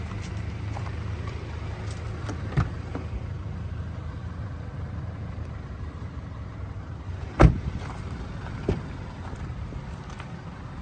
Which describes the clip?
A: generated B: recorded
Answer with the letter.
A